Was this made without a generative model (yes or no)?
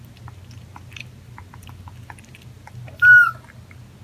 yes